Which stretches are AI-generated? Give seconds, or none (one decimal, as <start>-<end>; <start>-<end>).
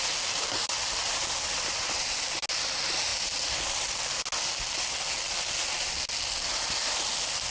none